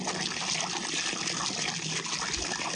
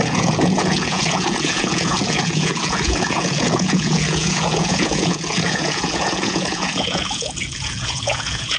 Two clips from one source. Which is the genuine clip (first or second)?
first